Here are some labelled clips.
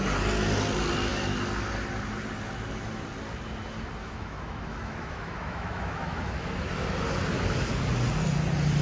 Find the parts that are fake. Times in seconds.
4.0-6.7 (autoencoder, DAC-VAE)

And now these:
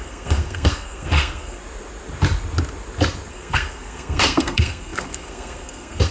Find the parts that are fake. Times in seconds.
0.0-1.6 (codec, SNAC); 3.3-6.1

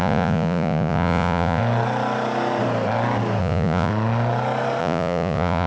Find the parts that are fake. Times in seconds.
0.0-1.6 (vocoder, Vocos); 3.4-3.9; 4.8-5.7

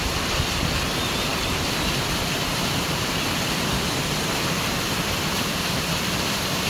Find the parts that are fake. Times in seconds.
none

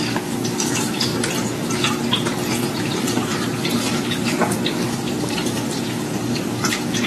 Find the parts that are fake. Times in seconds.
0.0-1.1 (codec, DAC); 2.8-7.1

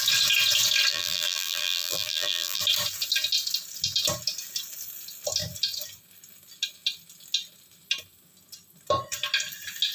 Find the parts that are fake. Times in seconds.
0.9-2.6 (vocoder, BigVGAN v2)

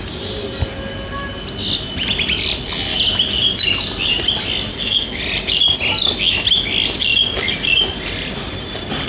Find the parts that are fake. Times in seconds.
4.7-5.2 (codec, SNAC)